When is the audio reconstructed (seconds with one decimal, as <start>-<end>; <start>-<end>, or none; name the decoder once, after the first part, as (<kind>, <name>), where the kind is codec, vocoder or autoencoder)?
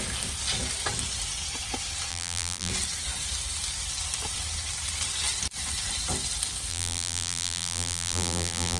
2.1-2.7 (vocoder, BigVGAN v2); 6.7-8.8